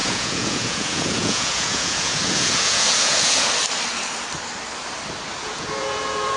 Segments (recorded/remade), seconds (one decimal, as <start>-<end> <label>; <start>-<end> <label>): 0.0-3.5 remade; 3.5-5.4 recorded; 5.4-6.4 remade